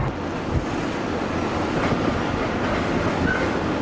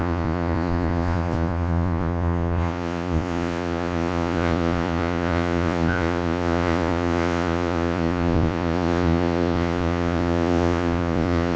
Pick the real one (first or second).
first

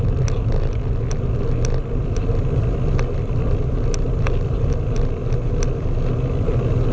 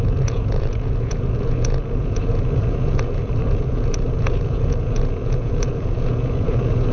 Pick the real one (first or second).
first